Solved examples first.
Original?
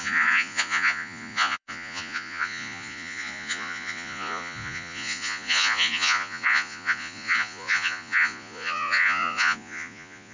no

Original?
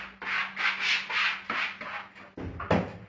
yes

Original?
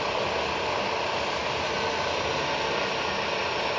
yes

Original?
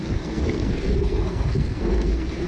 no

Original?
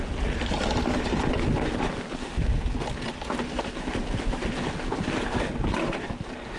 yes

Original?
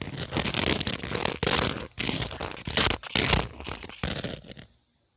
yes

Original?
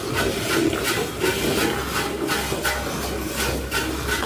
yes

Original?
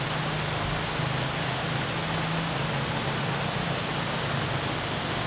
yes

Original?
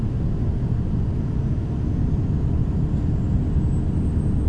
yes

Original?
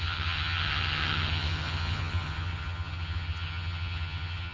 no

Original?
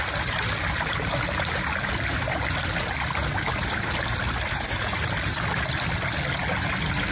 yes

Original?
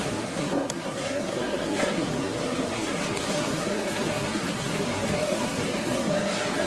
no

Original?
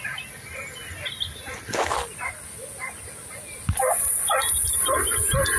yes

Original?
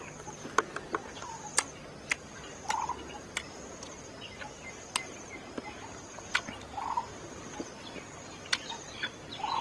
yes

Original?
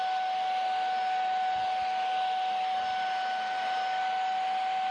yes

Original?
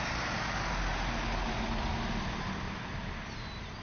yes